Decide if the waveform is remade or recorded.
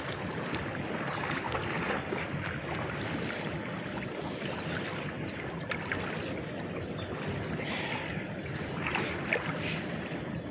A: recorded